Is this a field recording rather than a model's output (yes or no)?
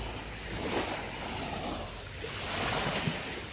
yes